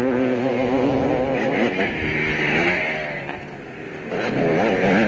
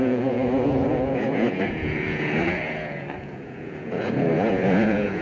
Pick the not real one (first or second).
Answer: second